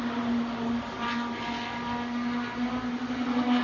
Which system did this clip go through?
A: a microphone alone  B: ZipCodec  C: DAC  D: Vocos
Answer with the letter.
A